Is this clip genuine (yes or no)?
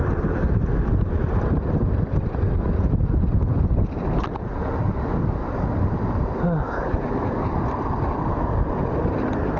yes